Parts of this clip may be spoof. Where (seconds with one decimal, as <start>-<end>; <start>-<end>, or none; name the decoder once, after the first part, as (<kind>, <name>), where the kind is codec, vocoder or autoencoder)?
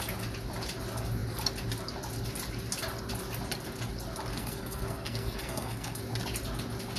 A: 4.3-6.0 (codec, SNAC)